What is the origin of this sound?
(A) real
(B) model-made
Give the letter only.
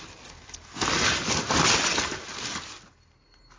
A